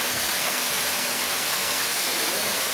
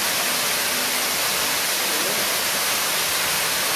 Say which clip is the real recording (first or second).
second